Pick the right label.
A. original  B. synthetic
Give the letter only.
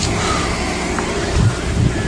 A